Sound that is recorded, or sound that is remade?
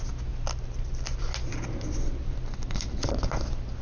recorded